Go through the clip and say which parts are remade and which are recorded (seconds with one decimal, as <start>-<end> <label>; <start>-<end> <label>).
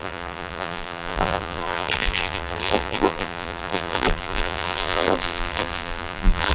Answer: 0.0-6.5 remade